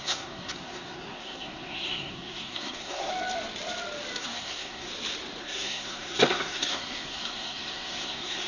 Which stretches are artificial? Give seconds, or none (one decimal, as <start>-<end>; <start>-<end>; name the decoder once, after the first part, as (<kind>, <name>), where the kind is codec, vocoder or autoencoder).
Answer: 0.0-3.1 (codec, SNAC); 4.2-4.9; 5.4-8.5

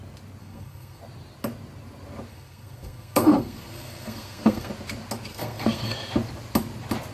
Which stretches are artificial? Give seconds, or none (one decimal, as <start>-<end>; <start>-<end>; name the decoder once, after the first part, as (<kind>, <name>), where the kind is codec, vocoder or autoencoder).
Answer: 0.4-1.0 (codec, SNAC); 2.3-4.7; 5.3-5.9

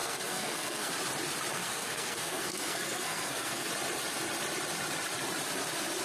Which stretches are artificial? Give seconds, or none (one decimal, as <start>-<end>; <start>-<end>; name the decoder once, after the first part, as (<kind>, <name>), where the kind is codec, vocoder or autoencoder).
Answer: 0.0-0.9 (codec, SNAC); 1.5-3.7

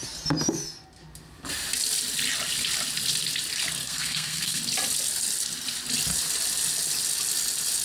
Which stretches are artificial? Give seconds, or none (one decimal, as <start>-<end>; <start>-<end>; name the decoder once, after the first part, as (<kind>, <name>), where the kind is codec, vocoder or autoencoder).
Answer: 3.8-4.6 (codec, SNAC)